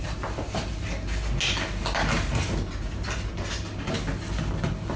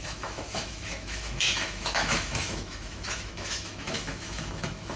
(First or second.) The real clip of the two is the first